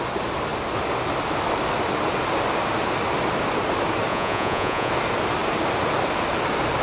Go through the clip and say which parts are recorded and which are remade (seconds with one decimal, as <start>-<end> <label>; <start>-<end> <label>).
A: 0.0-4.1 recorded; 4.1-4.9 remade; 4.9-6.8 recorded